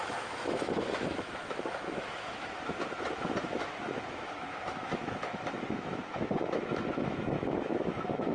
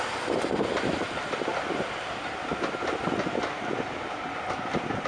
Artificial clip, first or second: first